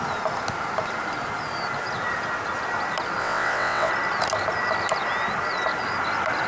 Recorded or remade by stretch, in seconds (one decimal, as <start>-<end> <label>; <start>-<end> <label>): 0.0-3.2 recorded; 3.2-3.9 remade; 3.9-6.5 recorded